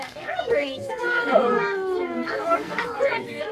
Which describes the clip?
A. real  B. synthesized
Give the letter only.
B